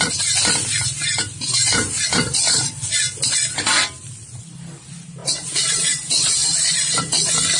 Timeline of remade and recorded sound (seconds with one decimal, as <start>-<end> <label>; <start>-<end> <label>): 0.0-7.6 recorded